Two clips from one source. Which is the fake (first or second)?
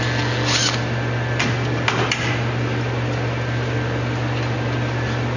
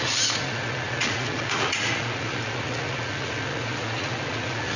second